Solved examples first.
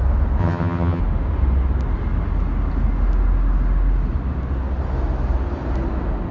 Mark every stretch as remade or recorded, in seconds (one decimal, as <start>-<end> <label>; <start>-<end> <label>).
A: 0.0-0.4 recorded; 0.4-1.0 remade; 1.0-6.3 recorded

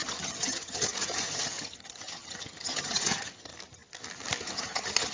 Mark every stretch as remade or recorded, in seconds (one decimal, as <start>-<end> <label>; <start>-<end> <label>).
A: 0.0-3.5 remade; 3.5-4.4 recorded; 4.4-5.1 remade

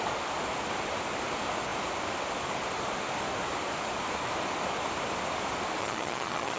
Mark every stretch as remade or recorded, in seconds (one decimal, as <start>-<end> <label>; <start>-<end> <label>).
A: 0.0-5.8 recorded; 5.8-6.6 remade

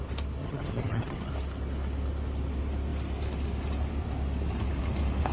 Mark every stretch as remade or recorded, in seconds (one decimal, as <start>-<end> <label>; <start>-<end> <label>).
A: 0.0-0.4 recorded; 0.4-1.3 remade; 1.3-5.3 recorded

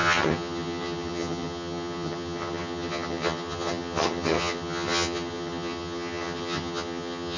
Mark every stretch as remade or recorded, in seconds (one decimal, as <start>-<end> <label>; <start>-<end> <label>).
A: 0.0-7.4 remade